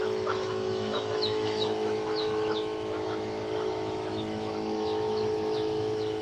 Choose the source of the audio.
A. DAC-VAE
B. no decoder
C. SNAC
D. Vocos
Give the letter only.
A